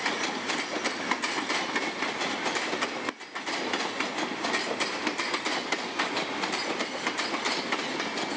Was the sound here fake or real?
real